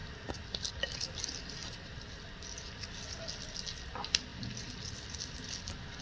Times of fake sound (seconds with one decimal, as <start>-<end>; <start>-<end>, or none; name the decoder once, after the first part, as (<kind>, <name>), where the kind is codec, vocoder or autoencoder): 1.6-2.2 (vocoder, BigVGAN v2); 4.3-5.3